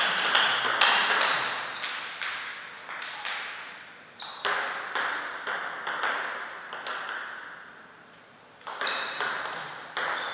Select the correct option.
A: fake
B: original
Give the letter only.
B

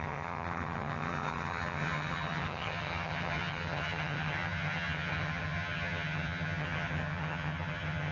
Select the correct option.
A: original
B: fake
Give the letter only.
B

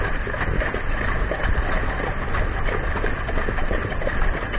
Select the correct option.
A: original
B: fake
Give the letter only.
A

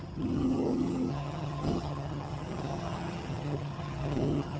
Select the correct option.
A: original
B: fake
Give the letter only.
B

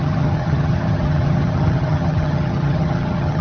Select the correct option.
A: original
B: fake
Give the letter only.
B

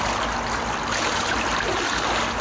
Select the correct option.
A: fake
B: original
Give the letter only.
B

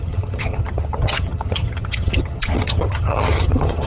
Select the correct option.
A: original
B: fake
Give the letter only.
B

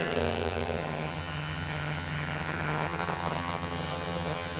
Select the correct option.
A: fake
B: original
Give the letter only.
A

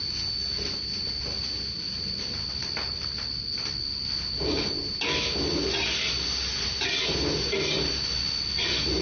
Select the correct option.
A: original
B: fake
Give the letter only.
A